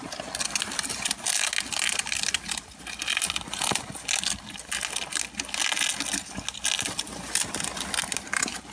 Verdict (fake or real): real